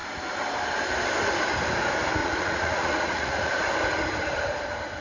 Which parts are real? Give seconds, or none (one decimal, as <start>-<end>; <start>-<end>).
0.0-2.2; 3.6-5.0